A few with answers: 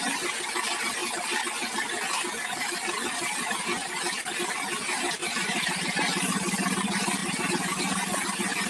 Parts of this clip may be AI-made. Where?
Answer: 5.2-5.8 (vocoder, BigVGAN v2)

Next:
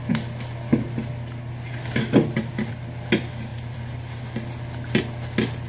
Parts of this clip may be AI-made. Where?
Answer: 3.5-4.2 (vocoder, BigVGAN v2)

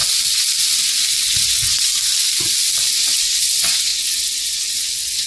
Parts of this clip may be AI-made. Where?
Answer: 1.4-1.9 (vocoder, WaveNeXt); 2.9-5.3

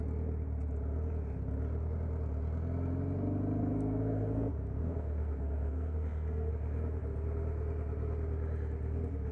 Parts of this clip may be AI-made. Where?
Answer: 3.6-6.5 (codec, SNAC)

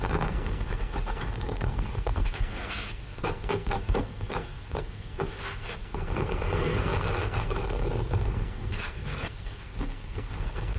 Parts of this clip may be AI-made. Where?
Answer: 0.0-10.8 (codec, SNAC)

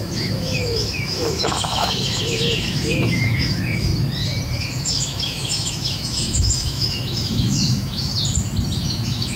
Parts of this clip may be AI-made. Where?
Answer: 0.0-3.9 (autoencoder, DAC-VAE); 4.6-8.1; 8.8-9.4

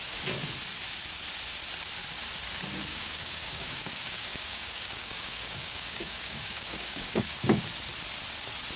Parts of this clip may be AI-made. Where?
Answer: 2.9-7.6 (codec, DAC)

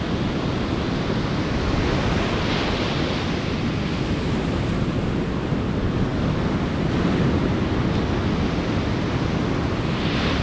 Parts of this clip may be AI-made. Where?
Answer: none